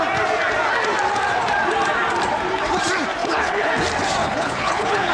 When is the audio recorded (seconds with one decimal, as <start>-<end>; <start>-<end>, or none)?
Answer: 0.0-3.2; 3.7-4.2

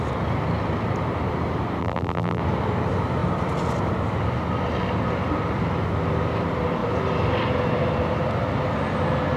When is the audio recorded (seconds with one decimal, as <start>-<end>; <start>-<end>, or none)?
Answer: 0.0-1.8; 2.4-9.4

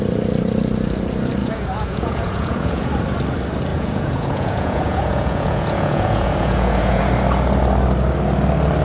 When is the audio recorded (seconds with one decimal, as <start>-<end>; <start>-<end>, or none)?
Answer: 0.0-1.4; 2.9-3.7; 7.0-8.8

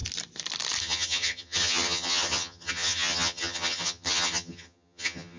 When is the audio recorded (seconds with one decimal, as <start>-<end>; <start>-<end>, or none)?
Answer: 0.0-0.8